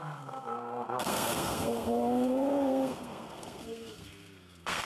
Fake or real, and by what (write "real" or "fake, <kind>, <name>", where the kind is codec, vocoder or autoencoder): fake, codec, SNAC